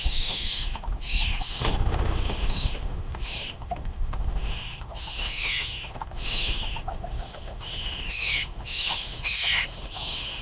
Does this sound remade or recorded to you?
remade